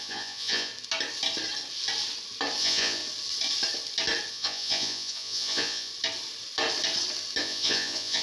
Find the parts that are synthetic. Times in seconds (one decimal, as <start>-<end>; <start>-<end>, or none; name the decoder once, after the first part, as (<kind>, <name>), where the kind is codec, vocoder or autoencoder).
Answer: 0.0-0.7 (vocoder, Vocos); 2.6-3.0; 4.3-5.9; 7.4-8.2